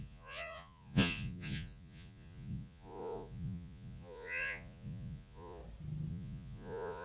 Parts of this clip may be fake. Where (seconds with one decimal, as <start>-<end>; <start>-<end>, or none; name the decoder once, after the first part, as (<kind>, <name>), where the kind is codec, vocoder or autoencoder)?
0.0-5.6 (vocoder, Vocos); 6.1-7.0